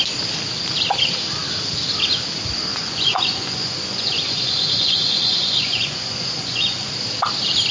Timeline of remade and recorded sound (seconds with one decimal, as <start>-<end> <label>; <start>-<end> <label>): 0.0-2.7 recorded; 2.7-6.9 remade; 6.9-7.7 recorded